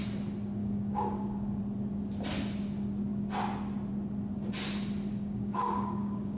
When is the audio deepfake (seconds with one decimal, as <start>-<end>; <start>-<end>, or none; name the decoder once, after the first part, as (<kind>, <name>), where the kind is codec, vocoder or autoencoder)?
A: 0.6-1.6 (codec, DAC); 5.1-6.4